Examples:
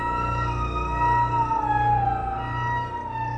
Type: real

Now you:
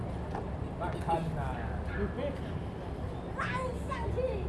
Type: real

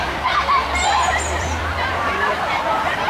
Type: fake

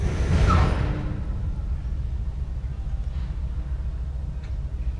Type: real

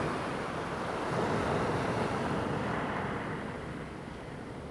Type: real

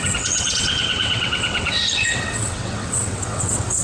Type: fake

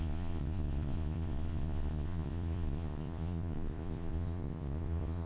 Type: fake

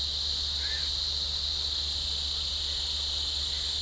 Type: real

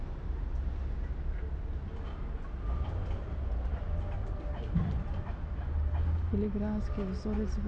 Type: real